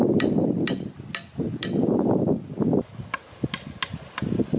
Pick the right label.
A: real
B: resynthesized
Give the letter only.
A